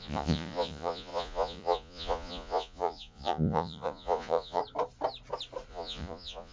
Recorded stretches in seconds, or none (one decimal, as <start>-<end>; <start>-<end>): 4.6-5.7